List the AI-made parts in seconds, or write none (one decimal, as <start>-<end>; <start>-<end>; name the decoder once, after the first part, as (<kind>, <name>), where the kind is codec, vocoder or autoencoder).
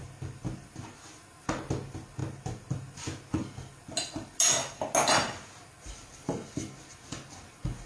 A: none